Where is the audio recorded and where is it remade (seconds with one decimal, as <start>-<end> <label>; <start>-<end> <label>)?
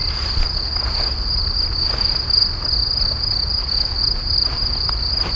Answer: 0.0-5.4 recorded